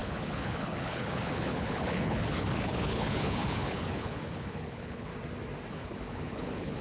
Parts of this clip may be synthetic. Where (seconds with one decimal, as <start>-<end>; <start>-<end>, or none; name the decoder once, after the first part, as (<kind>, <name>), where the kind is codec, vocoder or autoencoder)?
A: 0.0-5.1 (codec, HILCodec); 5.7-6.8